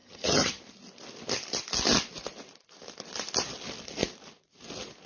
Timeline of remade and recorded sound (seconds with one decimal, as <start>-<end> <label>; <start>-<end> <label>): 0.0-0.6 remade; 0.6-5.1 recorded